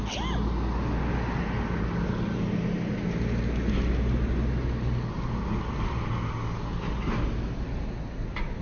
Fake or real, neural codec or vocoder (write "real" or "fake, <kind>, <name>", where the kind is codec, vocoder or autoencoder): real